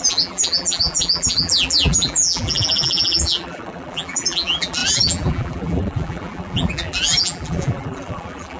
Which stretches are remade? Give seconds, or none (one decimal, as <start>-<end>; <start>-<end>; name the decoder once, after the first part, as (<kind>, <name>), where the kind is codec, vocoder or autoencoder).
0.0-8.6 (vocoder, BigVGAN v2)